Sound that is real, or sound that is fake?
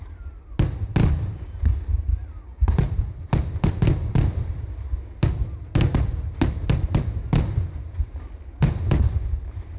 real